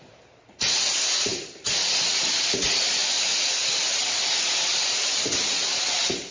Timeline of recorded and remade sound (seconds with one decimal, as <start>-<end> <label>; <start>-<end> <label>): 0.0-6.3 recorded